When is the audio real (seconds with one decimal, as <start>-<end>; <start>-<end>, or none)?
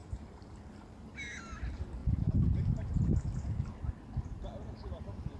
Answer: 0.7-2.0; 2.9-5.4